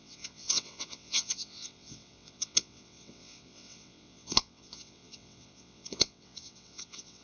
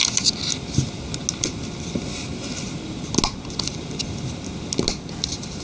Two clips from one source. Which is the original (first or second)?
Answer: second